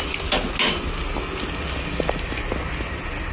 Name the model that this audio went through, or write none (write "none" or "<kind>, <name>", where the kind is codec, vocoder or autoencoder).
none